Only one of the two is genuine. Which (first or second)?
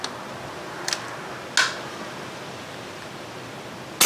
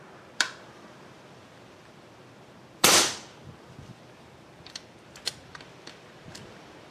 first